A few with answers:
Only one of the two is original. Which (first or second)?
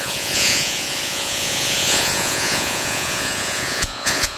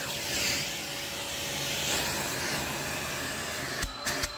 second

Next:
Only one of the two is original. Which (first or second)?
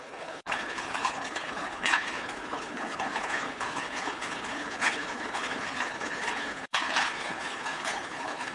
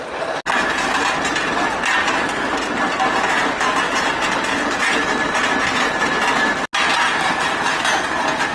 second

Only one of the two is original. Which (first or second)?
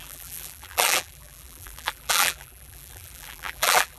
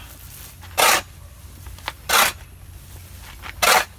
second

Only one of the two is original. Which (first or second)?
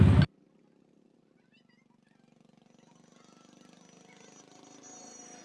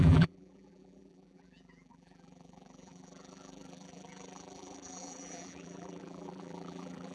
first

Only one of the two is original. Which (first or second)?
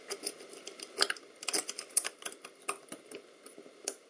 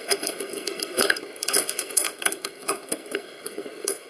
first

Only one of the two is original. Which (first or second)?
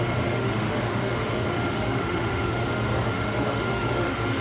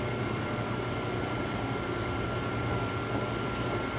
second